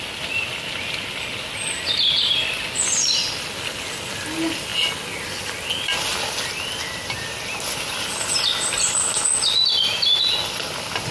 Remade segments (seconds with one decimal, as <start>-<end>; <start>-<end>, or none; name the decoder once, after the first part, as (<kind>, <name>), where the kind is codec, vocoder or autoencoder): none